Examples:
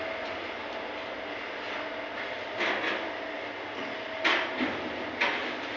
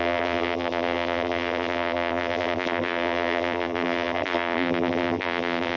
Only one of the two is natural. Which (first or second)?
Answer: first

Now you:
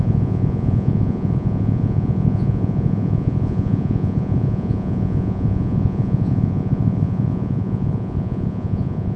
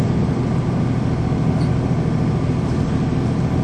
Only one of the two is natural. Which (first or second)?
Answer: second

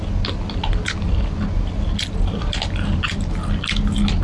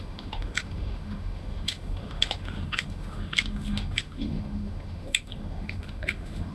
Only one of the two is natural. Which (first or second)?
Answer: first